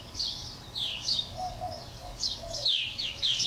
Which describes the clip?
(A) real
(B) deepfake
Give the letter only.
B